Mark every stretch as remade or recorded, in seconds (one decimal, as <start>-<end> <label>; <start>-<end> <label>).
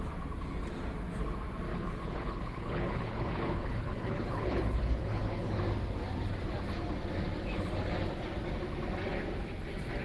0.0-1.7 recorded; 1.7-5.6 remade; 5.6-10.0 recorded